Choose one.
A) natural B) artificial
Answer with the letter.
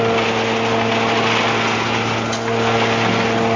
A